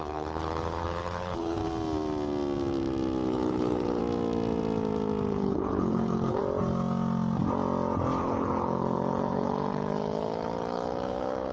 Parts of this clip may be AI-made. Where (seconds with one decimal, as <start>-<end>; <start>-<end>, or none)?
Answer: 0.0-1.6; 3.3-4.0; 5.3-6.4; 8.2-11.5